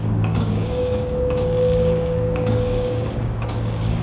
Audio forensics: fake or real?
fake